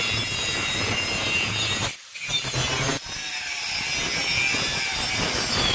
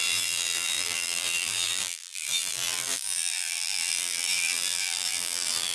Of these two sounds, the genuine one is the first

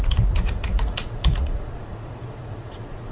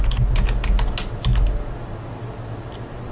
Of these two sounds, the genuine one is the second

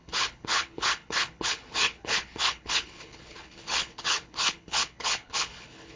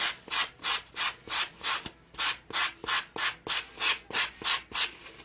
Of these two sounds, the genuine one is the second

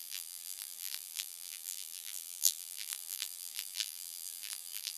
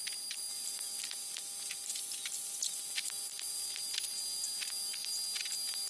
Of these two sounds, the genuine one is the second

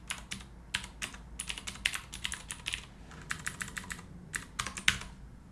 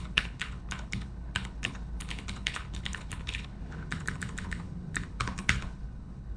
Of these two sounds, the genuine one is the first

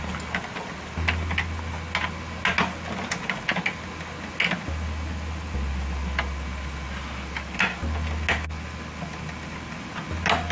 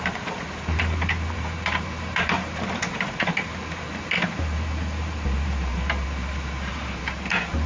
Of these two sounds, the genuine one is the first